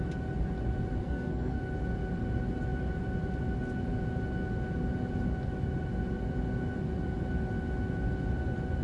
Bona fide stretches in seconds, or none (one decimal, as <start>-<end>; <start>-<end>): 0.0-1.0; 1.6-8.8